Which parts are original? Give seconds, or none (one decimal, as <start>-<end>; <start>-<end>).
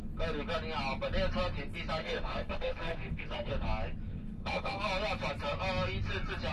0.0-2.0; 3.5-4.1; 4.8-6.5